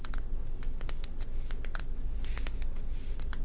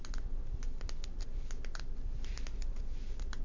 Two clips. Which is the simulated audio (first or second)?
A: second